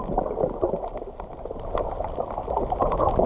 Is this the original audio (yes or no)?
yes